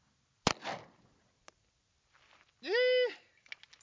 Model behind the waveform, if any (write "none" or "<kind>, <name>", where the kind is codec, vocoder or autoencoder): none